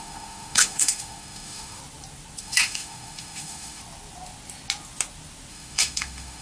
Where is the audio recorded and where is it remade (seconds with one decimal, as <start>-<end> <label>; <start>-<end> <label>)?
0.0-1.8 remade; 1.8-2.4 recorded; 2.4-3.8 remade; 3.8-5.5 recorded; 5.5-6.4 remade